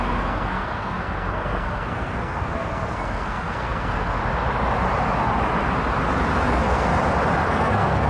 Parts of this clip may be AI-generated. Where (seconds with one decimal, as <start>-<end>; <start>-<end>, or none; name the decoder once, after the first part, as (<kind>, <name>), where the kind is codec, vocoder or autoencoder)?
0.0-4.2 (codec, SNAC); 6.5-6.9; 7.5-8.1